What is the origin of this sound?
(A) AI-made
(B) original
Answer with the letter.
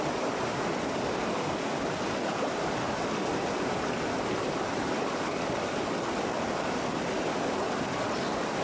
B